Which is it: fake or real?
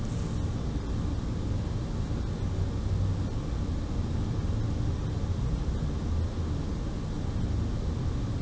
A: real